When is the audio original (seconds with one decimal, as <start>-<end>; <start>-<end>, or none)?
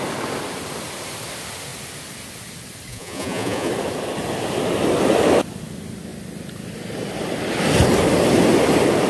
0.0-2.9; 3.7-9.1